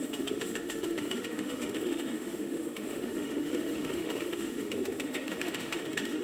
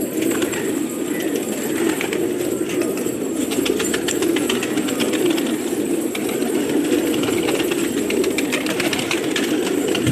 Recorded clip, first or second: second